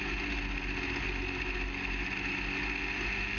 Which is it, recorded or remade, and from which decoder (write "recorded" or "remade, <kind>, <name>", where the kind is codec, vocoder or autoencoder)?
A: recorded